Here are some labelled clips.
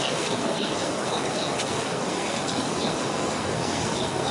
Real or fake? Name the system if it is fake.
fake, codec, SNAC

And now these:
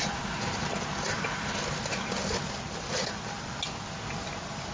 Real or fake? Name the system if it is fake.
real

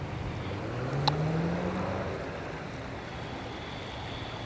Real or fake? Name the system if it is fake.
real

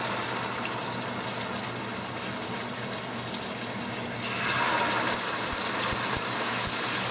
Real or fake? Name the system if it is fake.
real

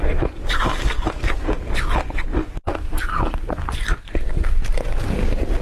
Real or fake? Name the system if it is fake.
real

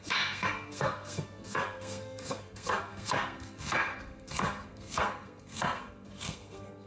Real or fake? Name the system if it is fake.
fake, codec, SNAC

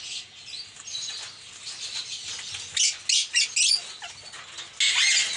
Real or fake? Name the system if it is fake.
real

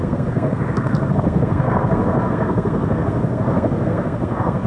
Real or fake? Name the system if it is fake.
fake, codec, SNAC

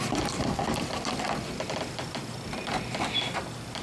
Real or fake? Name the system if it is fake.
real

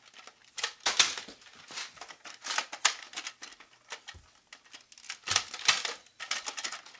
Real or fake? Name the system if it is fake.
real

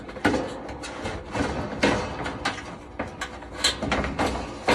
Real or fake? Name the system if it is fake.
real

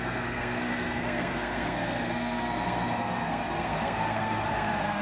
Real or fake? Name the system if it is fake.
fake, codec, SNAC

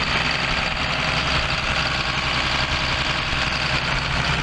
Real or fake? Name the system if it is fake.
real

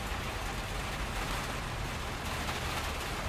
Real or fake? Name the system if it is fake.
real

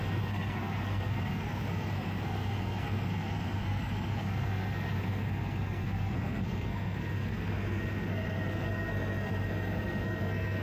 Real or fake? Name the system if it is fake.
fake, codec, SNAC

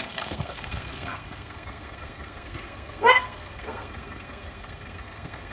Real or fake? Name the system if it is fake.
fake, codec, SNAC